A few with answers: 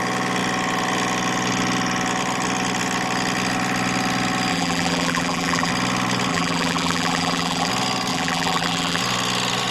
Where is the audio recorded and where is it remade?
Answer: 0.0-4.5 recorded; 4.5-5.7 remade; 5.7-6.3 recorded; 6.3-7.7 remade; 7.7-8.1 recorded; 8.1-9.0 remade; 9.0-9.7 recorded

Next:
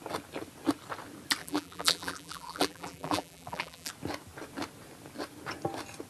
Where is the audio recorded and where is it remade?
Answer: 0.0-1.4 recorded; 1.4-3.9 remade; 3.9-6.1 recorded

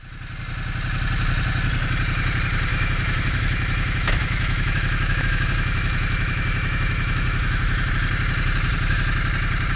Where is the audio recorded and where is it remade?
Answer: 0.0-2.7 recorded; 2.7-7.9 remade; 7.9-9.8 recorded